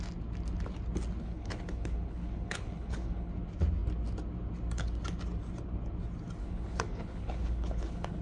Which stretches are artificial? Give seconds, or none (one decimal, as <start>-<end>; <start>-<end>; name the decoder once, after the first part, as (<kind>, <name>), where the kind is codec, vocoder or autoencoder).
1.2-3.3 (codec, HILCodec); 6.4-8.2

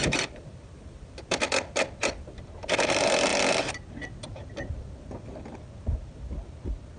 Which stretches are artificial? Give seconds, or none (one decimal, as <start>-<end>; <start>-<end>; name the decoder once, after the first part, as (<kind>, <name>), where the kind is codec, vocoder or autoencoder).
0.0-3.3 (vocoder, BigVGAN v2); 3.9-7.0

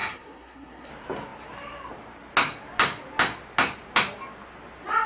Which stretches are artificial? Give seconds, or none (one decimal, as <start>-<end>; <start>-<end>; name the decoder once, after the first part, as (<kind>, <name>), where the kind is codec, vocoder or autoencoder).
0.0-0.9 (codec, SNAC)

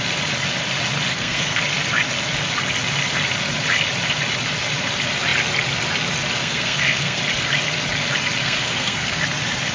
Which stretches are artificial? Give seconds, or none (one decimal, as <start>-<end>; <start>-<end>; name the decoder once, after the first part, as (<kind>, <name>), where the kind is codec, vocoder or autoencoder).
1.1-1.6 (codec, SNAC); 6.4-7.2; 8.4-9.2

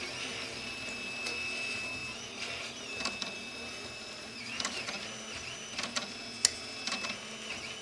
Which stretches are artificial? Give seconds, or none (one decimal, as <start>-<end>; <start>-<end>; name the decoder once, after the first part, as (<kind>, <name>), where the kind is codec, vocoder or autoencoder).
none

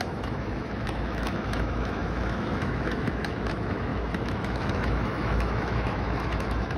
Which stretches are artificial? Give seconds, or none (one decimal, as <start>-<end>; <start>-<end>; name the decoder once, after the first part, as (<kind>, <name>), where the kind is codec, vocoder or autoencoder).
0.0-6.8 (autoencoder, DAC-VAE)